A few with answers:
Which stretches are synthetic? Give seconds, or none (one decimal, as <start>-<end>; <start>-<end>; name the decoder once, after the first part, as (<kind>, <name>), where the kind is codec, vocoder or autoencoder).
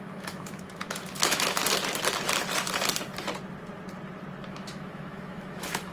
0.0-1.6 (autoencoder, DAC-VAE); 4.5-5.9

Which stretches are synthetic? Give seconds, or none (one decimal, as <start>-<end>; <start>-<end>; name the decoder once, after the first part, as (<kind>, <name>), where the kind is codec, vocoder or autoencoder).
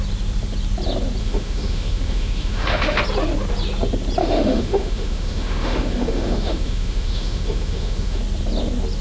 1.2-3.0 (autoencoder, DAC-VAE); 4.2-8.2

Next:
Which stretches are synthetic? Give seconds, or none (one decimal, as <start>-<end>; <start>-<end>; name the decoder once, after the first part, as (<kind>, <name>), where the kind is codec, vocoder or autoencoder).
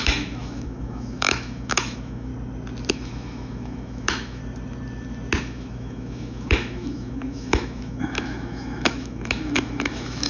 0.0-2.3 (autoencoder, DAC-VAE); 2.9-4.4; 5.4-10.3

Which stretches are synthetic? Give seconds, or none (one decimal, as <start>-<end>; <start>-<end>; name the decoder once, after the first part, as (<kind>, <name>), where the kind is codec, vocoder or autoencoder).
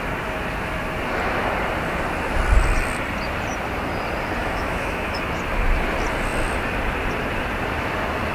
4.4-5.2 (autoencoder, DAC-VAE)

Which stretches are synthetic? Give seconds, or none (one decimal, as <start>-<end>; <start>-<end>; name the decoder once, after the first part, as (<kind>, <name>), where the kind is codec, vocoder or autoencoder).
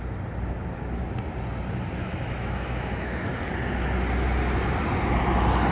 2.0-3.4 (autoencoder, DAC-VAE)